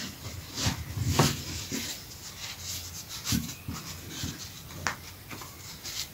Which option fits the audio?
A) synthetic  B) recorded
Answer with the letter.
B